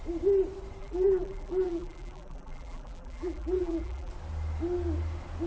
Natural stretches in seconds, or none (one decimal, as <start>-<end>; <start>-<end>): 0.0-0.8; 4.1-5.5